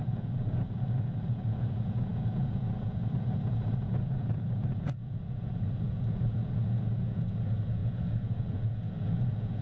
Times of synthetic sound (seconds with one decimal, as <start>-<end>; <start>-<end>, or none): 0.0-9.6